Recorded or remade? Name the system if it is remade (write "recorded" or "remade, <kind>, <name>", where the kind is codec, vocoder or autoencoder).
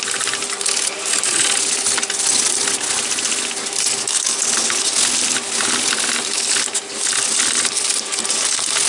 recorded